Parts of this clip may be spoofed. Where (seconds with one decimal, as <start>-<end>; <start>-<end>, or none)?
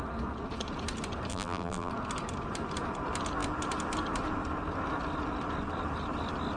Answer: 1.3-1.9